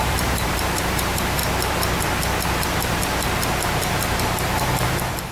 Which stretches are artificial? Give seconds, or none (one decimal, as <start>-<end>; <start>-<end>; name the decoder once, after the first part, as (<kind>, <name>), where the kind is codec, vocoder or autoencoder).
0.0-1.4 (vocoder, BigVGAN v2); 4.2-5.3